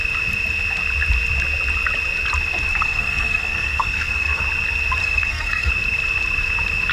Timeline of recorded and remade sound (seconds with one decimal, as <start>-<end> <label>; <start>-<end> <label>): 0.0-2.7 recorded; 2.7-4.4 remade; 4.4-5.0 recorded; 5.0-5.7 remade; 5.7-6.9 recorded